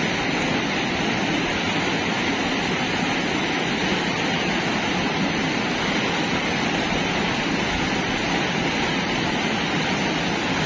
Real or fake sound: real